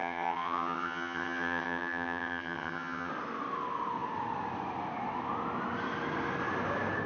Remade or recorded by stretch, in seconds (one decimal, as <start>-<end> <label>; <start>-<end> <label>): 0.0-3.1 remade; 3.1-7.1 recorded